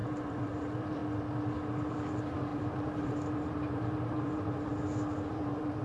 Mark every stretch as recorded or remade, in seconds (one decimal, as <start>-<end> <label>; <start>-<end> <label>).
0.0-1.0 remade; 1.0-1.9 recorded; 1.9-4.7 remade; 4.7-5.3 recorded; 5.3-5.8 remade